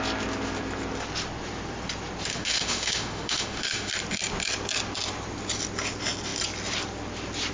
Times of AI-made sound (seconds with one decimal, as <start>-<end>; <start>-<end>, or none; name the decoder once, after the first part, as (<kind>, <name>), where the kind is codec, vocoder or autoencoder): 2.3-3.9 (autoencoder, DAC-VAE)